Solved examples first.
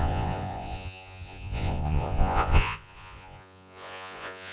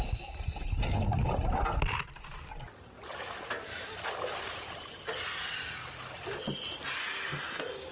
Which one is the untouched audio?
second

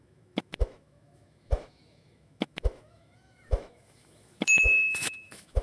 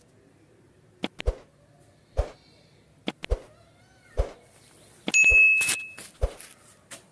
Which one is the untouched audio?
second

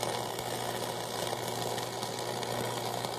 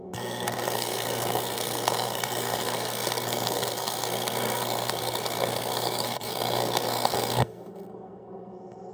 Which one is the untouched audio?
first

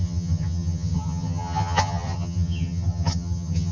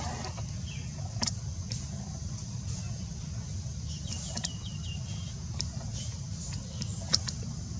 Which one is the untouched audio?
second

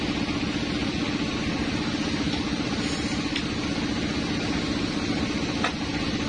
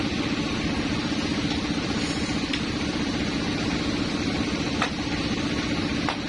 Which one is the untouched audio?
first